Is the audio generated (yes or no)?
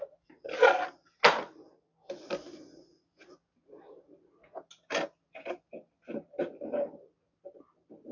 no